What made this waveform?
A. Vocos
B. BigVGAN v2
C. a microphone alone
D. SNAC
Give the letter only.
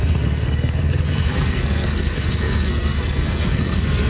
D